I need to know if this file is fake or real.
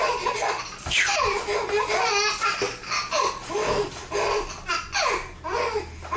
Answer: real